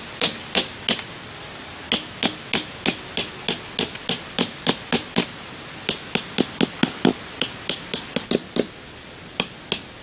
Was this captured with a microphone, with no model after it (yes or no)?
yes